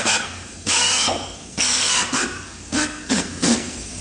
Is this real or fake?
fake